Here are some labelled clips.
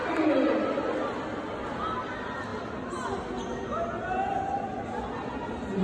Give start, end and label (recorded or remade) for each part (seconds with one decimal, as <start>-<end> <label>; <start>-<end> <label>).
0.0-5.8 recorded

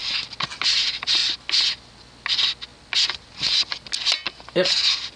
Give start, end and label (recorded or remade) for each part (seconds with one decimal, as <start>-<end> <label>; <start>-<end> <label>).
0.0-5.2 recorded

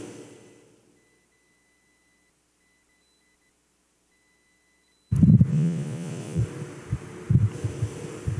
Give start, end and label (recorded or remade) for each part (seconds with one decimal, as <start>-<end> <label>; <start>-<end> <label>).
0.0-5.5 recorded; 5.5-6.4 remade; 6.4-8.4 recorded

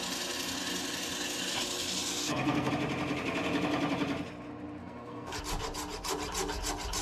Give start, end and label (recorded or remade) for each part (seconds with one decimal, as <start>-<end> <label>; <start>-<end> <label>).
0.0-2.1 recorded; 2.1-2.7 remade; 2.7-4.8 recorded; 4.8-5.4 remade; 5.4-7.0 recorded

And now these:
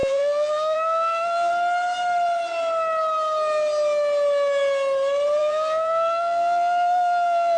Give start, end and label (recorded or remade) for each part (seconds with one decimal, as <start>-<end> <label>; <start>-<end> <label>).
0.0-1.5 remade; 1.5-5.4 recorded; 5.4-7.6 remade

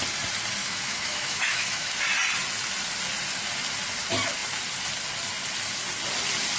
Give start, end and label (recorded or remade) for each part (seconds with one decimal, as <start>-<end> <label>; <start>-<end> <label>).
0.0-0.6 recorded; 0.6-1.9 remade; 1.9-6.6 recorded

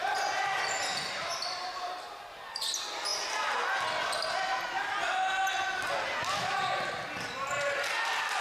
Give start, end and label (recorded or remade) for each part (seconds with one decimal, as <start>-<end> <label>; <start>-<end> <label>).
0.0-0.9 recorded; 0.9-2.0 remade; 2.0-8.4 recorded

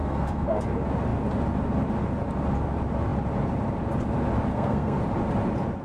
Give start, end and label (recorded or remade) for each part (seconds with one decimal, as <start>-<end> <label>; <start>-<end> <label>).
0.0-0.6 remade; 0.6-4.5 recorded; 4.5-5.0 remade; 5.0-5.8 recorded